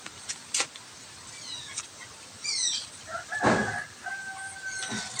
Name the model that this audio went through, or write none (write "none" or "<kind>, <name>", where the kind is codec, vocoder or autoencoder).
none